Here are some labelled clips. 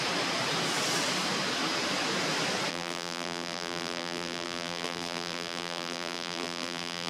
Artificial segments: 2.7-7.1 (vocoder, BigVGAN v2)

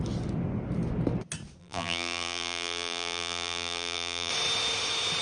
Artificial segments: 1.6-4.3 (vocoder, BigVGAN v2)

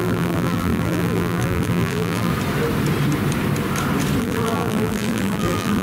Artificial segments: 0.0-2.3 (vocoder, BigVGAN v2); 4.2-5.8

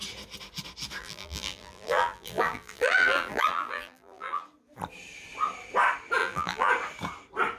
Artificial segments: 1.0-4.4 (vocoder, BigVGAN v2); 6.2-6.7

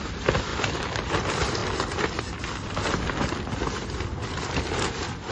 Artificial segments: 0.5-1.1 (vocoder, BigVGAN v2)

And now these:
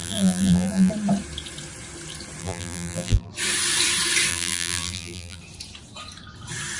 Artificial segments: 0.0-0.9 (vocoder, BigVGAN v2); 2.4-3.3; 4.3-5.4